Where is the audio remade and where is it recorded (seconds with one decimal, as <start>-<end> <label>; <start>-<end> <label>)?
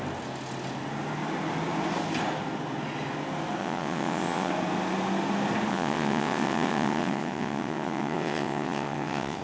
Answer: 0.0-3.6 recorded; 3.6-4.5 remade; 4.5-5.7 recorded; 5.7-9.4 remade